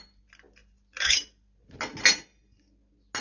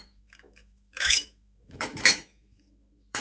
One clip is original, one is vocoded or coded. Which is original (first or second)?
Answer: first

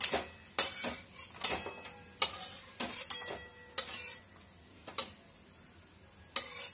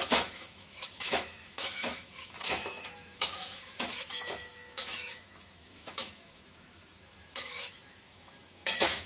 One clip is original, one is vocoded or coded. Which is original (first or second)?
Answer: first